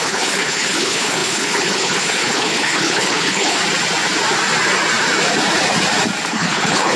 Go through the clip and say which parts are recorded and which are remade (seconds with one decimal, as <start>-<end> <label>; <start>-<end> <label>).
0.0-3.6 remade; 3.6-6.3 recorded; 6.3-7.0 remade